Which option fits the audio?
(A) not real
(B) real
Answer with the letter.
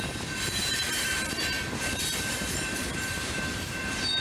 A